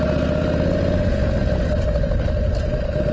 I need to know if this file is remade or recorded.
recorded